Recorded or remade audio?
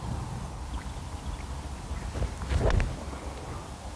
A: recorded